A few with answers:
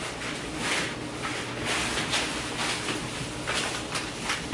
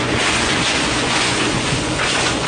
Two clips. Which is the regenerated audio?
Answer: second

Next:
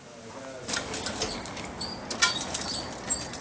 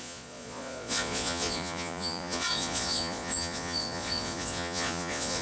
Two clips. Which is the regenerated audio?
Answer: second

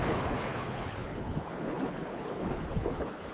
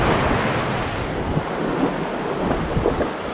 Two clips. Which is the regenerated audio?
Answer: first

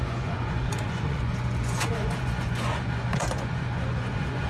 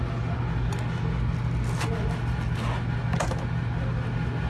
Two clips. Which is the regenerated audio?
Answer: first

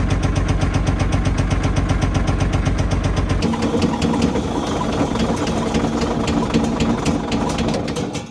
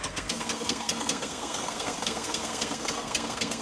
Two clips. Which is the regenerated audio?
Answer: second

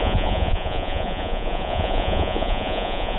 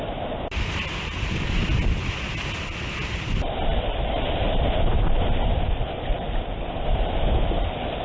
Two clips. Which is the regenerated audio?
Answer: first